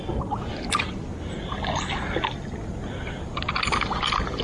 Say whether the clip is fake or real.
real